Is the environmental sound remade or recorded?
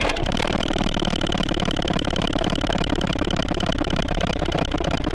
remade